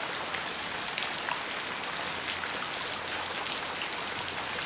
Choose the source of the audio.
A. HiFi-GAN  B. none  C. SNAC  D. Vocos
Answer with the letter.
B